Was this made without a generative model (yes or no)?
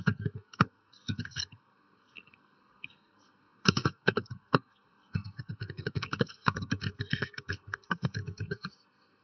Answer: no